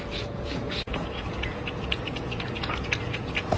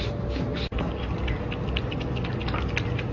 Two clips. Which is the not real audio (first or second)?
first